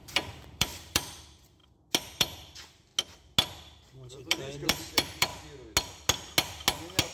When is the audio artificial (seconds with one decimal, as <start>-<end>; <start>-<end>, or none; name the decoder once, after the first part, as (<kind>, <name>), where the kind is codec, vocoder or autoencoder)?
0.0-1.6 (vocoder, BigVGAN v2); 2.1-2.9; 4.1-5.3